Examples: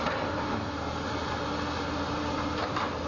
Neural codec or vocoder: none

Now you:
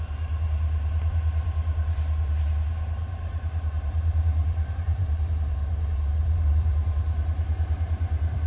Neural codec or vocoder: vocoder, BigVGAN v2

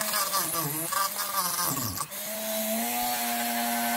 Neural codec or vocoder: none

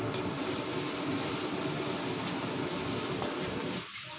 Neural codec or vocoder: none